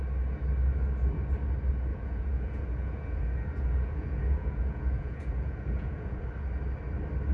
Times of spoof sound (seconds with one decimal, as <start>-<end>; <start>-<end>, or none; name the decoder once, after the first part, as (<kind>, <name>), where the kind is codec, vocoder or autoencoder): 1.9-6.2 (vocoder, Vocos)